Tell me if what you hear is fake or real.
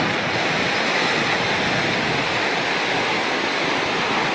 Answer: real